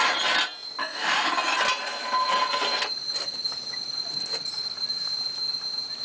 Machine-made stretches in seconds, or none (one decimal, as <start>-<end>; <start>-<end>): 0.8-1.3